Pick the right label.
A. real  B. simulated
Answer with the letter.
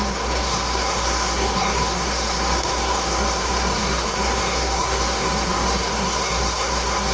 B